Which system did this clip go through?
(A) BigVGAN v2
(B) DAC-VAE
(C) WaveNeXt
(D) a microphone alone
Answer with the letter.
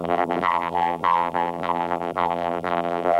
A